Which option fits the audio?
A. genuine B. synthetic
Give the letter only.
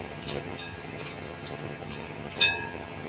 B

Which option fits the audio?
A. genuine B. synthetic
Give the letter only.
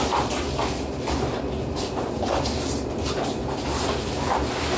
A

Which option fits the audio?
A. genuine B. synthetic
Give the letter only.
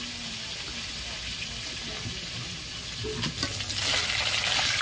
A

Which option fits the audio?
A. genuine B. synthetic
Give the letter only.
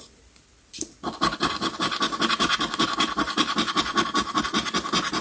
A